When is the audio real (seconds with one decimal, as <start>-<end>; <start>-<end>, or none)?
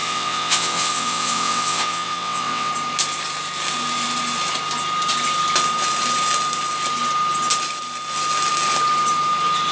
2.7-9.7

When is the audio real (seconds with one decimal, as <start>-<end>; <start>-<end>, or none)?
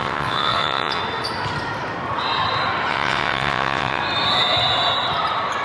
1.0-2.9; 4.0-5.6